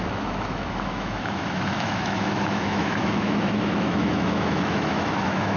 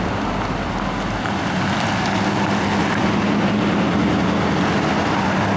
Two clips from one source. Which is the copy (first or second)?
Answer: first